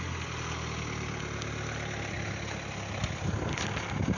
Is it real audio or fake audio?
real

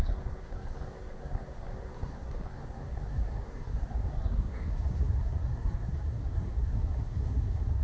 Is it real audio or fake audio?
fake